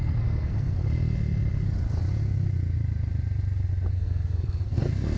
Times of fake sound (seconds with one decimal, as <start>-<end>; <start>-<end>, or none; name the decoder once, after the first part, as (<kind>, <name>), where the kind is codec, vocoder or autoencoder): 0.0-0.8 (codec, SNAC); 3.9-5.2